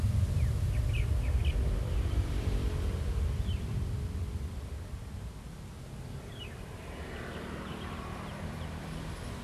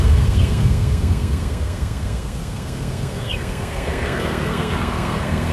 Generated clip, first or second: second